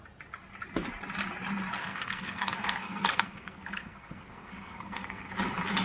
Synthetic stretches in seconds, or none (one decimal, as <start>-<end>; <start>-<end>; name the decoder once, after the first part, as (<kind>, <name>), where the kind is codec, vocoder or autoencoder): 1.8-5.3 (codec, SNAC)